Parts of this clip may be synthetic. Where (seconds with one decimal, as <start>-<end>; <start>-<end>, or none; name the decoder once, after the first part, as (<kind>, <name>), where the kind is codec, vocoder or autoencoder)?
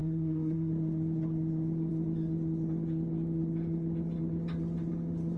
0.0-0.7 (codec, SNAC)